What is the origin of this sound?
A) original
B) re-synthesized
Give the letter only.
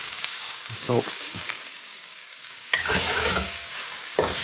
B